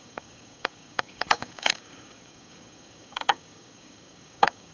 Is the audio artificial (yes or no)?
yes